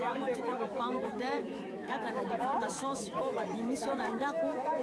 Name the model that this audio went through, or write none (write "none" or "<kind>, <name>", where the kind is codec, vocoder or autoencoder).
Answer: autoencoder, DAC-VAE